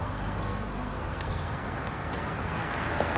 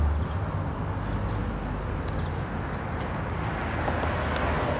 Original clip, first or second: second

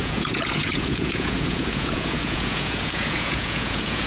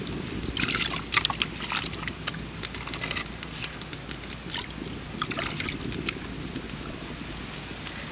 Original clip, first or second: second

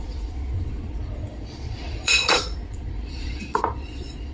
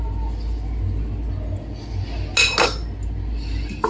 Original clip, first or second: second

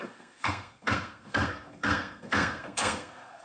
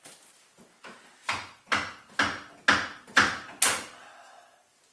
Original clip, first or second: second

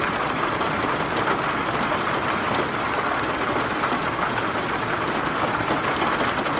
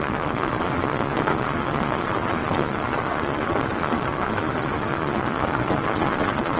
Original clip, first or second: first